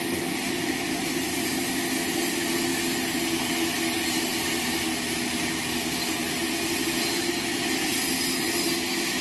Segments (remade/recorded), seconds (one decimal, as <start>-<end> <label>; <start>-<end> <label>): 0.0-9.2 recorded